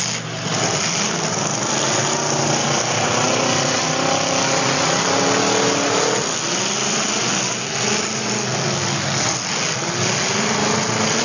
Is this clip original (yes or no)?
yes